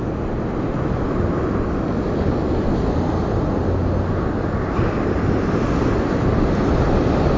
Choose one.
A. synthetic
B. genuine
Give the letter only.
B